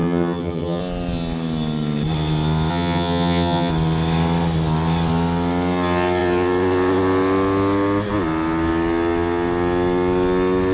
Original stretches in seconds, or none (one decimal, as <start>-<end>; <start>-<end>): 0.8-2.7; 3.7-10.7